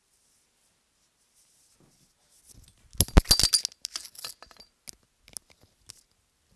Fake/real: real